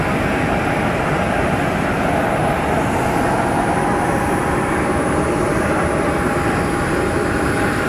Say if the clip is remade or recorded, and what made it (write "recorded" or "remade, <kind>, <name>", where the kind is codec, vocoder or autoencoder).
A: recorded